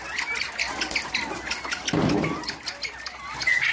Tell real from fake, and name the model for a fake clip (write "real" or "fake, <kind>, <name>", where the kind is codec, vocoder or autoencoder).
real